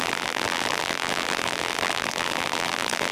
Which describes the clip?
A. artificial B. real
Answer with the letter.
A